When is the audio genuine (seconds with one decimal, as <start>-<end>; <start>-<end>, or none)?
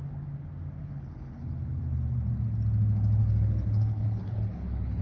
0.0-0.8; 1.8-3.2